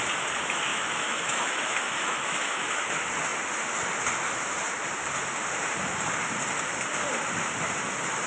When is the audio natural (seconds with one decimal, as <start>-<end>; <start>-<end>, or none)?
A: 0.0-0.7; 2.9-8.3